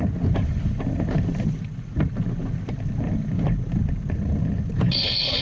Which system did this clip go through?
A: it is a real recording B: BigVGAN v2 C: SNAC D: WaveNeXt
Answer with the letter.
A